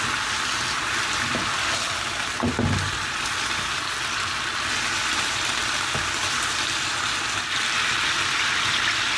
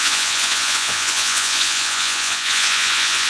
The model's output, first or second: second